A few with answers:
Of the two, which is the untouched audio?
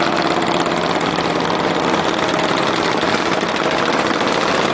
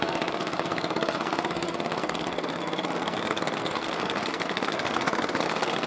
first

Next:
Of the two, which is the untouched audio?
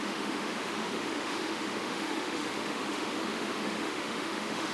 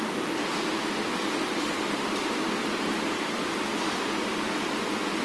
second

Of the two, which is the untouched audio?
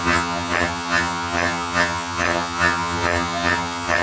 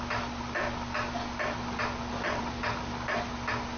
second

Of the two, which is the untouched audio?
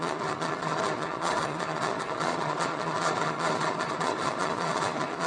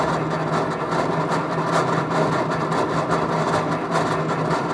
second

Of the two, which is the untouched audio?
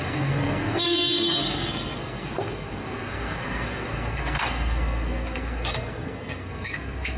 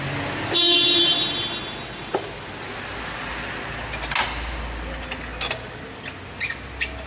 second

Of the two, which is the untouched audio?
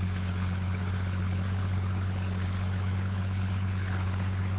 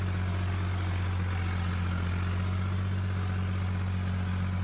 second